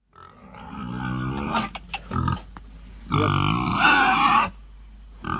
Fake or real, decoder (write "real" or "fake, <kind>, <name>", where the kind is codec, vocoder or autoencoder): real